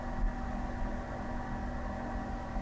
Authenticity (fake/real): real